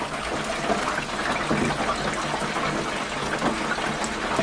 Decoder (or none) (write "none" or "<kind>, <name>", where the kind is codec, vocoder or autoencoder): none